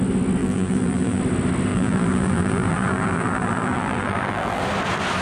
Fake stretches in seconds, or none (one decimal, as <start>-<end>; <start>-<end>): 0.4-1.2; 1.7-4.6